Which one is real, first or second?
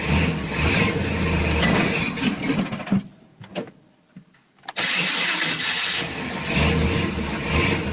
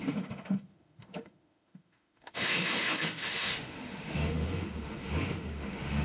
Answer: first